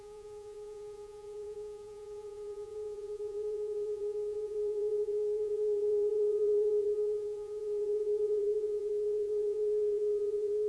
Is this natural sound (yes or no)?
no